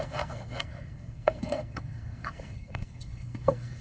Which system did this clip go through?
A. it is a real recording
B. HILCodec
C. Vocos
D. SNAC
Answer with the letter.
D